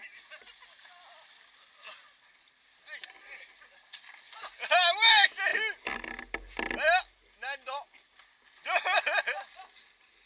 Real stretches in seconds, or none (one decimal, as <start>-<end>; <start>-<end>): 0.0-10.3

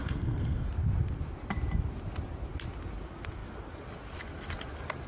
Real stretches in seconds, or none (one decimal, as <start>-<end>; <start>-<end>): 0.7-5.1

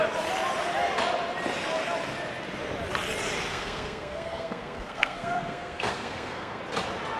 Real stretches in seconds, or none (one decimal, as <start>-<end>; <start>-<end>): 0.0-3.5; 6.6-7.2

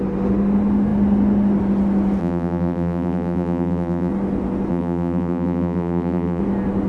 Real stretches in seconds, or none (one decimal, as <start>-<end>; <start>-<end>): 0.0-2.2; 4.1-4.7; 6.4-6.9